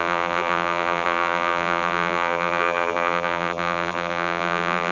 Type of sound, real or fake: fake